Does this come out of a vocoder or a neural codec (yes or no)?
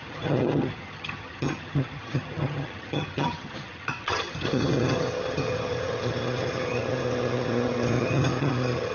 yes